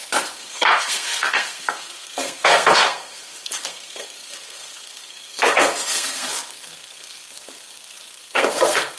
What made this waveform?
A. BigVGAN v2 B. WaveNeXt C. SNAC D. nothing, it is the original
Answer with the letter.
C